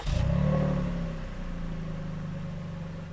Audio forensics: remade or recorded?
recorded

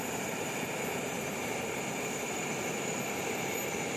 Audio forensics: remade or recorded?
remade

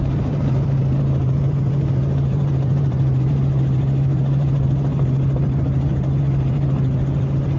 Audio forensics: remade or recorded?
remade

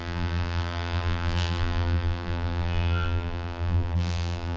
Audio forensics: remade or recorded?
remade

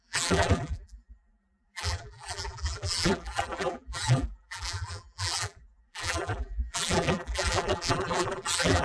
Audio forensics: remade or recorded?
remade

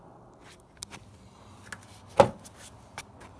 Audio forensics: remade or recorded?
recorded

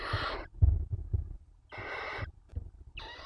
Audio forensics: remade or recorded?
recorded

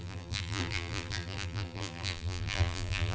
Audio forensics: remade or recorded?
remade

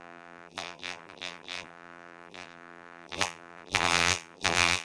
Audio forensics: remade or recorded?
remade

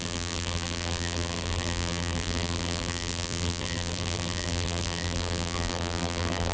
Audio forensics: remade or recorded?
remade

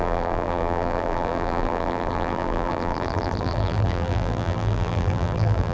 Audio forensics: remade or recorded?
remade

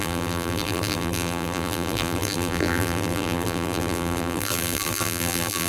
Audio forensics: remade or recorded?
remade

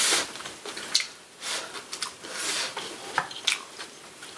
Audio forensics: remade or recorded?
remade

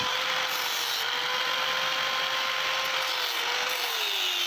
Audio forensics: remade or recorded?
recorded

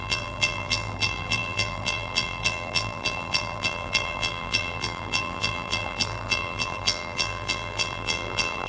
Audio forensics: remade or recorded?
remade